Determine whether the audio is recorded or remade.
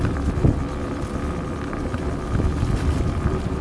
recorded